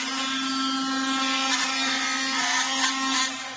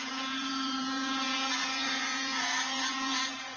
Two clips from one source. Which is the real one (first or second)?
first